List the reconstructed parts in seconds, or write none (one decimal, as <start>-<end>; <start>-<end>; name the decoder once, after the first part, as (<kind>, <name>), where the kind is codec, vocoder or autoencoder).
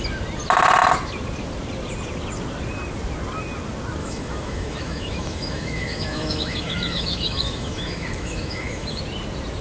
4.0-9.0 (autoencoder, DAC-VAE)